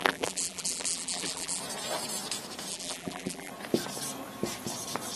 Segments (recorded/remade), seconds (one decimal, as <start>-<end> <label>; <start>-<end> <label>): 0.0-1.6 remade; 1.6-2.7 recorded; 2.7-3.5 remade; 3.5-5.2 recorded